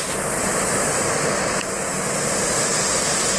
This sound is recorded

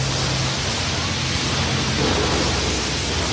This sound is recorded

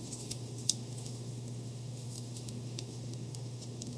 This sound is remade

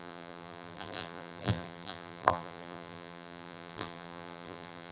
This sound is remade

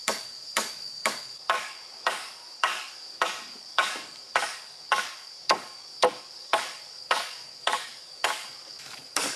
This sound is remade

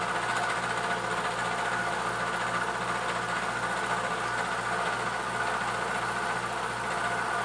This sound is recorded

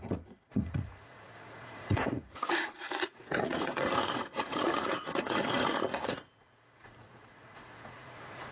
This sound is remade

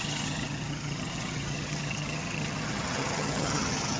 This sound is remade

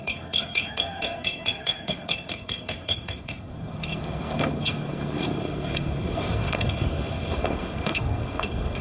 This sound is remade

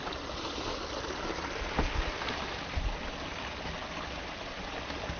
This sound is recorded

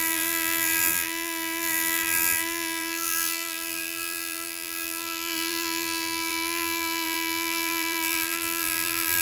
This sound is remade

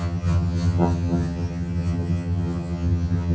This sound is remade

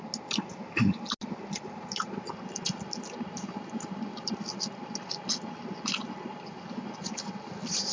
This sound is recorded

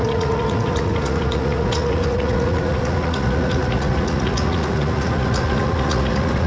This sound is remade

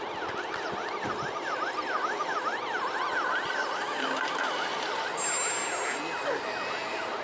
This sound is recorded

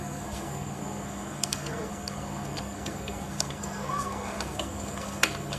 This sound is remade